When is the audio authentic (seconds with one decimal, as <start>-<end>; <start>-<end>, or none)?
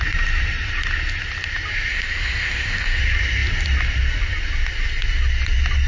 0.0-1.9; 3.0-5.9